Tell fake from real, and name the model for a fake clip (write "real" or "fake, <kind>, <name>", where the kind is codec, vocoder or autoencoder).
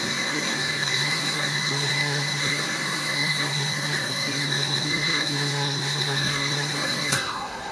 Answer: fake, codec, SNAC